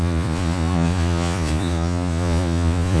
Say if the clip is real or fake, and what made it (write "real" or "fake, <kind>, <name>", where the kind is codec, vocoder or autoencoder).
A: fake, vocoder, Vocos